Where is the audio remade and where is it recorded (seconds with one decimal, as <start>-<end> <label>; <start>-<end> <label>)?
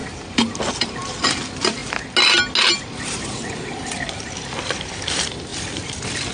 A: 0.0-1.3 recorded; 1.3-1.8 remade; 1.8-2.8 recorded; 2.8-6.3 remade